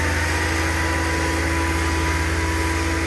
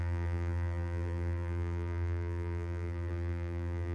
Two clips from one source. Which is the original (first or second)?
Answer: first